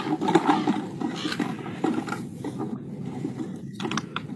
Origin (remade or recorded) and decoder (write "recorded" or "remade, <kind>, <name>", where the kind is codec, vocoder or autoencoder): recorded